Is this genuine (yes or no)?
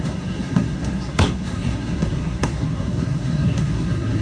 no